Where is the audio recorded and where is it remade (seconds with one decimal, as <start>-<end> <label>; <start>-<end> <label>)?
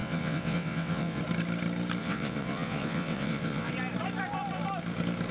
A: 0.0-1.2 remade; 1.2-2.0 recorded; 2.0-3.7 remade; 3.7-5.3 recorded